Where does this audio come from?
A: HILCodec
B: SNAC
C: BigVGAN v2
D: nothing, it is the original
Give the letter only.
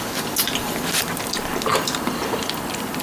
D